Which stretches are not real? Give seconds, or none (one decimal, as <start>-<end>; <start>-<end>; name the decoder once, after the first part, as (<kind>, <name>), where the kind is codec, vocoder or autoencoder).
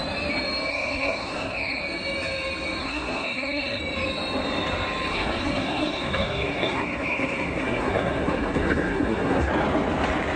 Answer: 0.7-1.8 (codec, SNAC); 2.8-3.8; 5.1-9.5